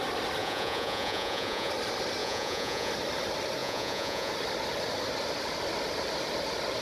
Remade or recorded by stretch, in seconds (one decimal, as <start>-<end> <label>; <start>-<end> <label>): 0.0-0.4 recorded; 0.4-1.7 remade; 1.7-2.2 recorded; 2.2-2.9 remade; 2.9-3.6 recorded; 3.6-4.3 remade; 4.3-6.8 recorded